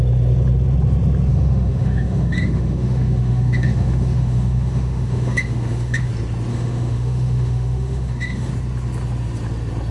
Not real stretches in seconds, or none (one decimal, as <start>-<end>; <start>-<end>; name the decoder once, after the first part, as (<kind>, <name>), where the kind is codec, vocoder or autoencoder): 1.3-6.1 (autoencoder, DAC-VAE); 6.5-8.5